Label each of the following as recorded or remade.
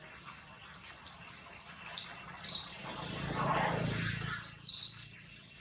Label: recorded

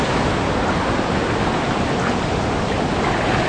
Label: recorded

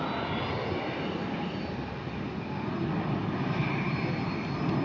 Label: recorded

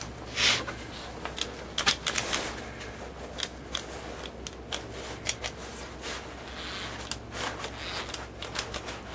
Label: recorded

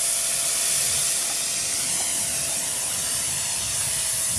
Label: recorded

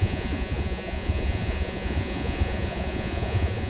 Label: remade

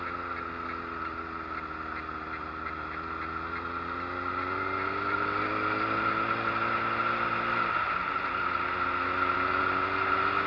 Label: recorded